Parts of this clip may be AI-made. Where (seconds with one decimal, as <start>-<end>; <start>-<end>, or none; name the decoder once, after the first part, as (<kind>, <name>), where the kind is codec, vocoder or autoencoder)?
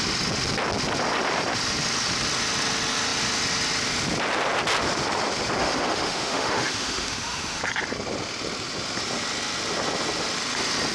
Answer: 5.6-7.6 (autoencoder, DAC-VAE)